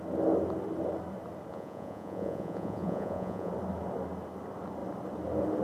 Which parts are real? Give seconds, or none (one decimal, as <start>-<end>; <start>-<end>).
0.0-1.5; 3.5-5.6